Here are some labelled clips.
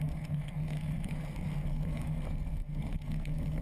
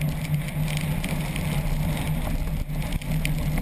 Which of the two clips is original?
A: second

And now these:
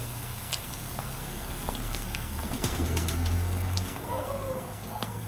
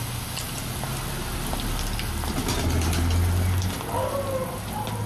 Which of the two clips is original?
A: second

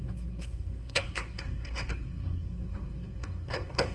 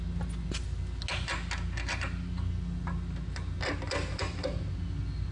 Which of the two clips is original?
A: second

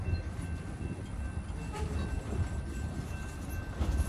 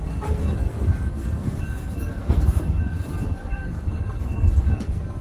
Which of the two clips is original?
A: first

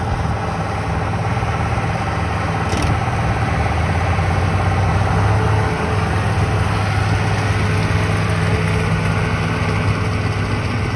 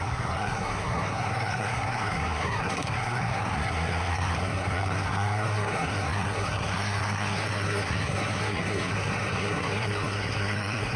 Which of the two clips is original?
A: first